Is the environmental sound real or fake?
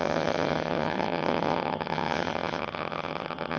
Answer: fake